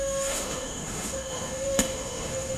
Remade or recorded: remade